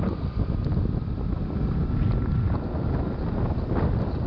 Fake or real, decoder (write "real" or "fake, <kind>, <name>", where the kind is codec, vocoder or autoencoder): real